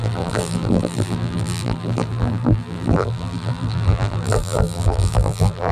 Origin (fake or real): fake